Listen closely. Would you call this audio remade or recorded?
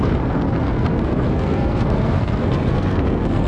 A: remade